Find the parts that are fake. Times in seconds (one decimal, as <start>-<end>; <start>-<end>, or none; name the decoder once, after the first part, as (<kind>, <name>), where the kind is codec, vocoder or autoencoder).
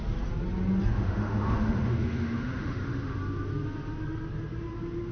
0.9-3.2 (autoencoder, DAC-VAE)